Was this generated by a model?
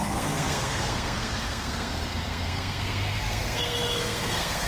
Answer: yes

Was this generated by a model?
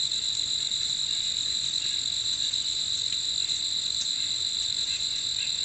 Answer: yes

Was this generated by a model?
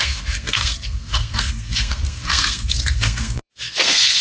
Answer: yes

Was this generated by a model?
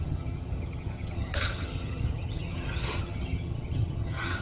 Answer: yes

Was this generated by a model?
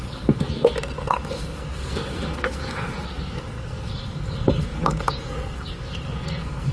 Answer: yes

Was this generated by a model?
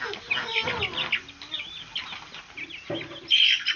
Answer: no